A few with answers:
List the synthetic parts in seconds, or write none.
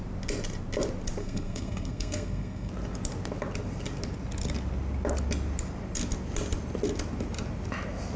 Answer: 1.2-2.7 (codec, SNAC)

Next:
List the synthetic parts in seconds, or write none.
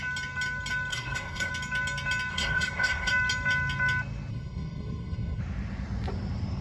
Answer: 0.9-1.5 (codec, SNAC); 2.3-3.1; 4.3-5.4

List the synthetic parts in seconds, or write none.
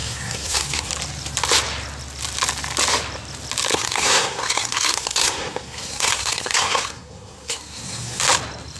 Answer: 0.0-0.9 (codec, SNAC); 3.7-8.2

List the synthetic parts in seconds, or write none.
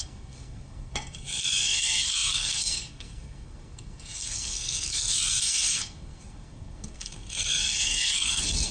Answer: 0.0-8.7 (codec, SNAC)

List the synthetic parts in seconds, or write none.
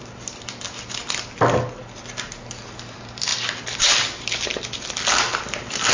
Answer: none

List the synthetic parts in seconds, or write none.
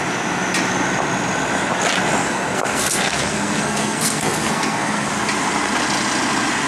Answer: 2.2-5.1 (codec, SNAC)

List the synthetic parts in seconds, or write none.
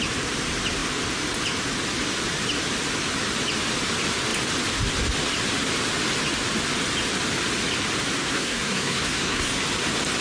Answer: 8.2-9.5 (codec, SNAC)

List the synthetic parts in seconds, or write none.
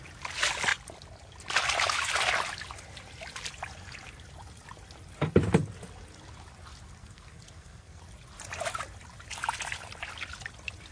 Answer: 7.0-8.0 (codec, SNAC)